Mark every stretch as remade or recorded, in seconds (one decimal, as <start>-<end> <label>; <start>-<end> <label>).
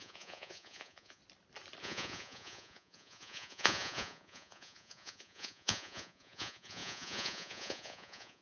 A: 0.0-1.2 remade; 1.2-1.8 recorded; 1.8-8.4 remade